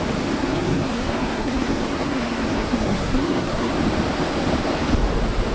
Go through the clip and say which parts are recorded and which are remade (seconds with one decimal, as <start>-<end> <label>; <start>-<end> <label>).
0.0-0.4 recorded; 0.4-3.7 remade; 3.7-5.5 recorded